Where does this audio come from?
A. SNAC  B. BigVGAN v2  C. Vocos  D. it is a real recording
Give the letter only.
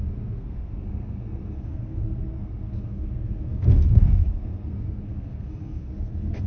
A